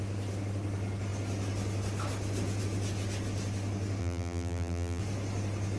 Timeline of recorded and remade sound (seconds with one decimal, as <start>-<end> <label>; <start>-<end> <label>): 0.0-4.0 recorded; 4.0-5.0 remade; 5.0-5.8 recorded